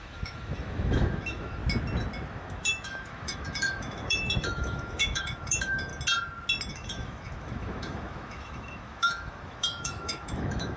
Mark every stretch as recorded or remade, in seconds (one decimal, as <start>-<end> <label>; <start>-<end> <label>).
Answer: 0.0-1.6 remade; 1.6-2.3 recorded; 2.3-5.9 remade; 5.9-6.7 recorded; 6.7-10.8 remade